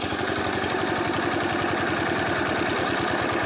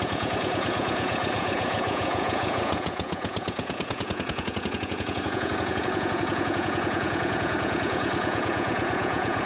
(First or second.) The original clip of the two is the first